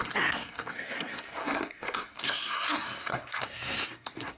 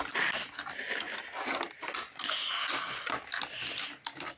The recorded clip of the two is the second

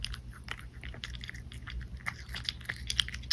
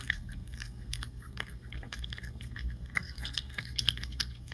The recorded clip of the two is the first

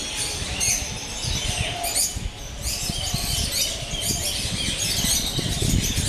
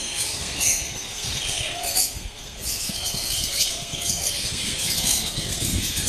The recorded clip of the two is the first